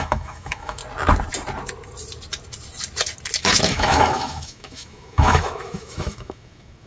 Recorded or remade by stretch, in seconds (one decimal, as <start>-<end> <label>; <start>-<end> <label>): 0.0-0.8 remade; 0.8-3.4 recorded; 3.4-6.9 remade